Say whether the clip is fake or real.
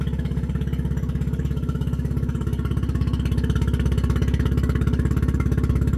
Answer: fake